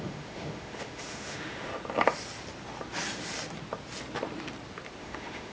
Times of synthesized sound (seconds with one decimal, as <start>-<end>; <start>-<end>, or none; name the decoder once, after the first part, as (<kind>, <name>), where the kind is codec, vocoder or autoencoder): 0.0-1.7 (autoencoder, DAC-VAE); 5.0-5.5